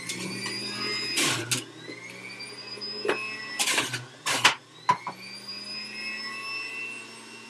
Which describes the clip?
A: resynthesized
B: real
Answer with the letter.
B